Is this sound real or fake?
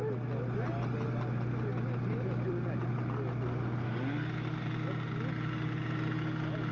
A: real